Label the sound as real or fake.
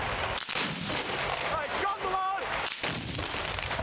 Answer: fake